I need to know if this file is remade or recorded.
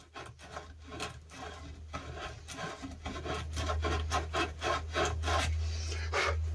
recorded